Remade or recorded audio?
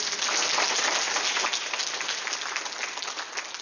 recorded